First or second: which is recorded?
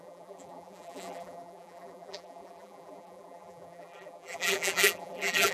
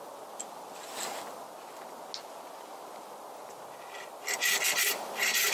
second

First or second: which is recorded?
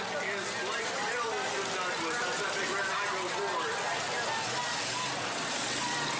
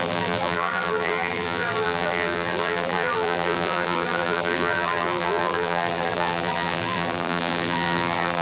first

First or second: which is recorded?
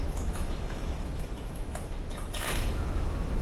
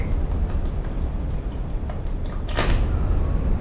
second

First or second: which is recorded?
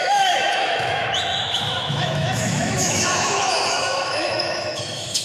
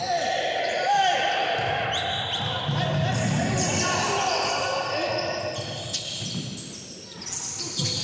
second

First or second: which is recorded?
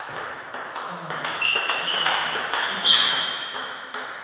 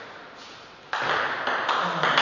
second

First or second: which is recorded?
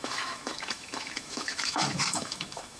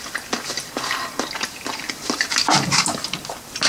second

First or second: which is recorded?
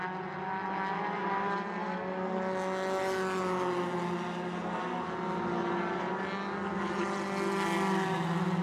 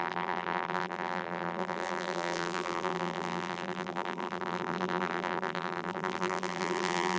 first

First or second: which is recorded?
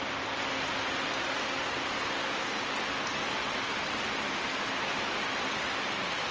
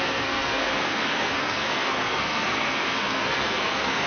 first